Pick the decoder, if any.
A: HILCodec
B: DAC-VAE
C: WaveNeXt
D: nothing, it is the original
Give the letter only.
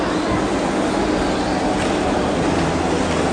D